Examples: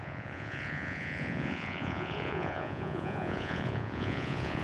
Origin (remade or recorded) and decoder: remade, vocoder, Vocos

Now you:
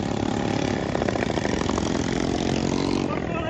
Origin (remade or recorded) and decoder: recorded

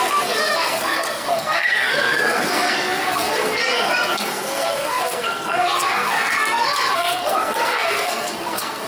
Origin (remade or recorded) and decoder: remade, codec, SNAC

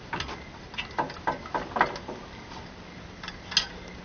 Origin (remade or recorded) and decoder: recorded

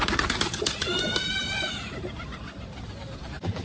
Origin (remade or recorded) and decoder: remade, vocoder, BigVGAN v2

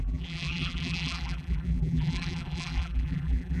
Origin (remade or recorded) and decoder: remade, vocoder, BigVGAN v2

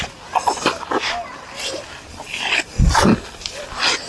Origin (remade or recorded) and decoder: recorded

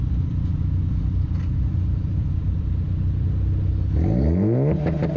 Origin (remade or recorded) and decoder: recorded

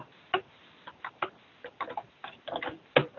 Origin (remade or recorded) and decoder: recorded